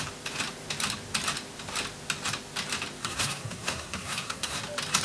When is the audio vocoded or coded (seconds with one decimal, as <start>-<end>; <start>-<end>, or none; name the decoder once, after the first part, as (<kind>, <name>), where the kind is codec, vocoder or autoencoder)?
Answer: 3.0-4.6 (codec, SNAC)